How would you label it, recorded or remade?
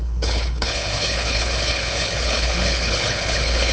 remade